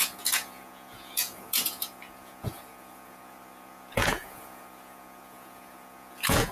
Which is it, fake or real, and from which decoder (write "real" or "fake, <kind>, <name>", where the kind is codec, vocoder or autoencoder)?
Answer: fake, vocoder, Vocos